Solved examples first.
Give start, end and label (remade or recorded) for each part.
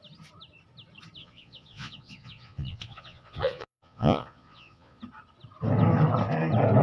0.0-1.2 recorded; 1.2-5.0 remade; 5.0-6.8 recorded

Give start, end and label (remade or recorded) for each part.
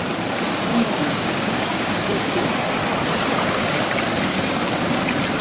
0.0-0.7 recorded; 0.7-2.5 remade; 2.5-3.3 recorded; 3.3-3.9 remade; 3.9-4.3 recorded; 4.3-5.0 remade; 5.0-5.4 recorded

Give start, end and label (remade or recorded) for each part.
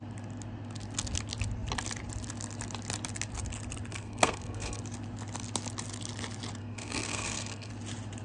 0.0-3.9 recorded; 3.9-4.8 remade; 4.8-6.6 recorded; 6.6-7.7 remade; 7.7-8.2 recorded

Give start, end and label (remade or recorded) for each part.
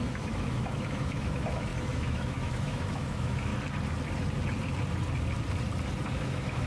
0.0-3.5 remade; 3.5-6.1 recorded; 6.1-6.7 remade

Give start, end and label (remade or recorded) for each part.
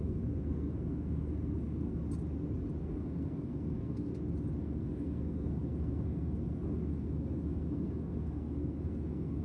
0.0-2.0 remade; 2.0-2.8 recorded; 2.8-4.1 remade; 4.1-4.6 recorded; 4.6-9.4 remade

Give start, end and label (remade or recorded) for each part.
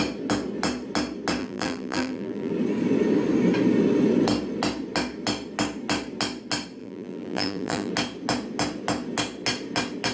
0.0-1.4 recorded; 1.4-2.5 remade; 2.5-6.8 recorded; 6.8-7.9 remade; 7.9-10.1 recorded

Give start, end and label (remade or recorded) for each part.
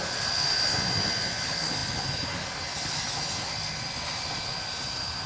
0.0-5.3 recorded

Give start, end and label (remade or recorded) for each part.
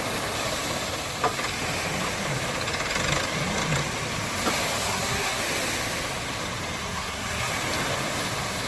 0.0-4.8 recorded; 4.8-5.4 remade; 5.4-6.8 recorded; 6.8-7.5 remade; 7.5-8.7 recorded